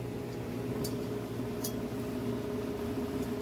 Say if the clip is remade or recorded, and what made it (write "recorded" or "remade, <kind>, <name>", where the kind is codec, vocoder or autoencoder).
recorded